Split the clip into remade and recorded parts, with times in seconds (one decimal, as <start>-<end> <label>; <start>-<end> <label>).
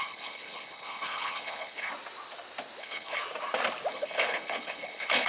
0.0-1.9 remade; 1.9-2.8 recorded; 2.8-3.2 remade; 3.2-3.9 recorded; 3.9-5.3 remade